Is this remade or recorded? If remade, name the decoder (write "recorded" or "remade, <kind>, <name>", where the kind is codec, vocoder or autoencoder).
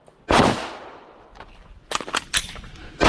recorded